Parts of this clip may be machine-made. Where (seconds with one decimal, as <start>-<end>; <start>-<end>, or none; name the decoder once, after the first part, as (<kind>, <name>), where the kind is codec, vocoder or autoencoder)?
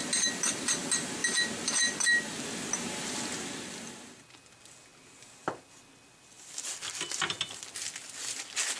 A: none